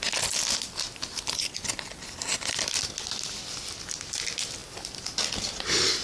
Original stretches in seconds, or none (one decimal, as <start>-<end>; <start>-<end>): 0.0-6.0